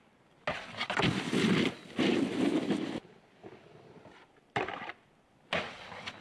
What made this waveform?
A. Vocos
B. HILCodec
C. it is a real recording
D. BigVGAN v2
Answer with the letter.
C